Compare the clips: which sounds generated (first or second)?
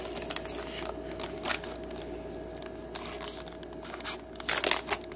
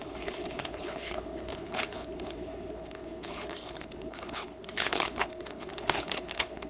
second